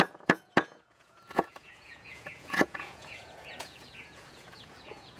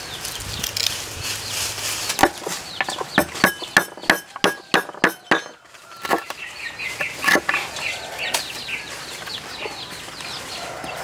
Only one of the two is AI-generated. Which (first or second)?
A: first